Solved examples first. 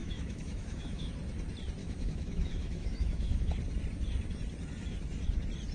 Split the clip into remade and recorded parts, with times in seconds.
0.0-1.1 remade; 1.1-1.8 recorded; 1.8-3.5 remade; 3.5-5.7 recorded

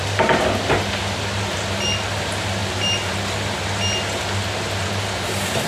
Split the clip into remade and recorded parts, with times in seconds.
0.0-5.7 recorded